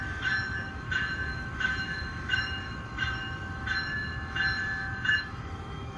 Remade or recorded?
remade